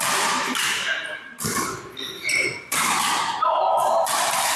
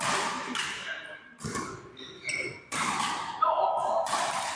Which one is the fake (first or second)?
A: first